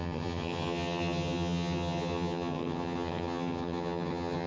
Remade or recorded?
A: remade